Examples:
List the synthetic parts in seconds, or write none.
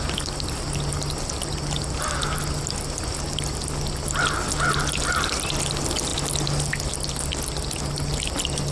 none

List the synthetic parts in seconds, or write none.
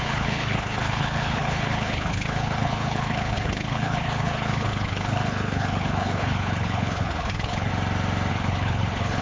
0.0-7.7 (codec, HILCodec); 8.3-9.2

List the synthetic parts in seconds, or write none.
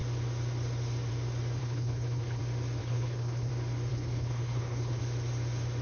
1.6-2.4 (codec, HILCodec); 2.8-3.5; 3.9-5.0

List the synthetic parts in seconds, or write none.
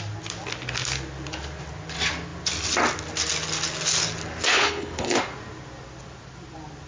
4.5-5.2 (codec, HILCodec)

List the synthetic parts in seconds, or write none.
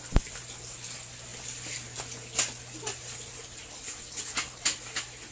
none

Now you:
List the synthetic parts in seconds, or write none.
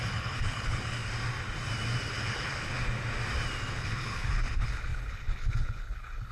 0.0-1.0 (codec, HILCodec); 2.1-2.8; 3.7-6.3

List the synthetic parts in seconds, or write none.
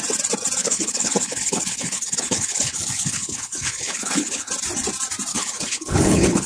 0.6-4.5 (codec, HILCodec); 5.3-6.5